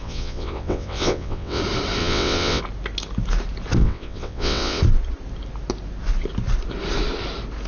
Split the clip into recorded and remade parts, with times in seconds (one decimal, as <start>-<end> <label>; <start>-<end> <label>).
0.0-1.6 remade; 1.6-2.0 recorded; 2.0-2.6 remade; 2.6-3.8 recorded; 3.8-4.8 remade; 4.8-7.7 recorded